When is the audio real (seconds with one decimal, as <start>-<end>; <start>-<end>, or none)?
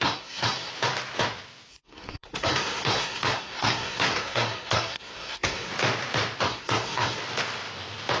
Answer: 0.7-1.7; 5.7-6.4; 7.2-8.2